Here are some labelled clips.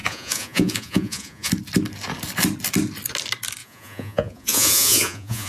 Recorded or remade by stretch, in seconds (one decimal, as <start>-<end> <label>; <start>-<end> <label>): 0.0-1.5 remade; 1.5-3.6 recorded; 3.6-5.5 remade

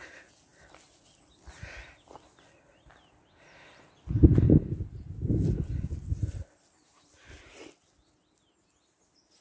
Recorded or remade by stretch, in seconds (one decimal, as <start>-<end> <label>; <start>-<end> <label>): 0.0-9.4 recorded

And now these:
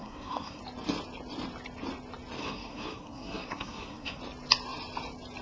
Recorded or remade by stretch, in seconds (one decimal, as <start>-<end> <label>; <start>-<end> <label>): 0.0-0.6 remade; 0.6-2.4 recorded; 2.4-4.2 remade; 4.2-5.4 recorded

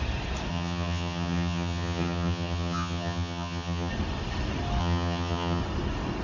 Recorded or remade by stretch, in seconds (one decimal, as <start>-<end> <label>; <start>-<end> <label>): 0.0-0.5 recorded; 0.5-3.9 remade; 3.9-4.8 recorded; 4.8-5.6 remade; 5.6-6.2 recorded